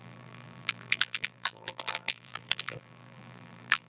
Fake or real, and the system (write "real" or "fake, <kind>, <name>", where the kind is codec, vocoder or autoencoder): fake, vocoder, BigVGAN v2